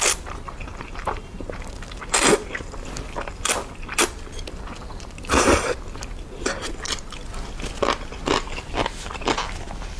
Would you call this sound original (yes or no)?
yes